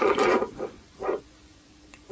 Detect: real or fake fake